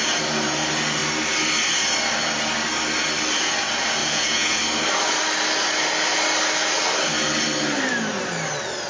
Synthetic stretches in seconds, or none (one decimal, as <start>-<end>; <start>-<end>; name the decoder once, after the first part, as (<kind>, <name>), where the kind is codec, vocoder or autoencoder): 4.0-4.6 (vocoder, Vocos)

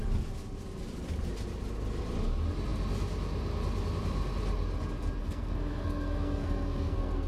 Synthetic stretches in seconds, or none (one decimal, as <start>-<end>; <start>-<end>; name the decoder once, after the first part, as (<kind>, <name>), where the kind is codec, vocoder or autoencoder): 5.2-7.3 (codec, SNAC)

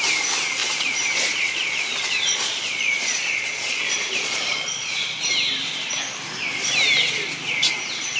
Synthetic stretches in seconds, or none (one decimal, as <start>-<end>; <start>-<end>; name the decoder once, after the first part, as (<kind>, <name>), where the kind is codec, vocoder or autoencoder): 0.6-5.3 (vocoder, Vocos)

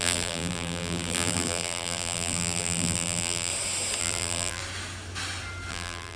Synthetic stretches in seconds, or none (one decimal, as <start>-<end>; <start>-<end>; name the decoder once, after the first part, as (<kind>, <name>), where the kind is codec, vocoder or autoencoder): 0.0-3.5 (vocoder, BigVGAN v2); 4.0-4.6; 5.7-6.2

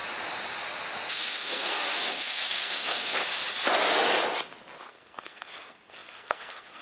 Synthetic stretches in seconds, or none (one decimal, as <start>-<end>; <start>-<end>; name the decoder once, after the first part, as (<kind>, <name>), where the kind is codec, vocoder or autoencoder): 1.1-3.2 (codec, SNAC); 4.9-6.8

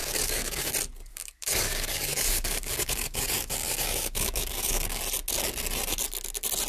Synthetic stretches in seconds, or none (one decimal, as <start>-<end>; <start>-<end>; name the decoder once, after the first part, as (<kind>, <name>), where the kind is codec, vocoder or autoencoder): 0.0-0.7 (codec, DAC); 1.1-5.0